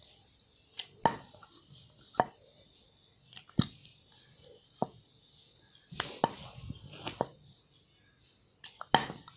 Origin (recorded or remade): recorded